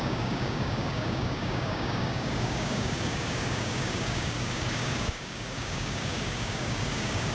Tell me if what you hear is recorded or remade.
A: remade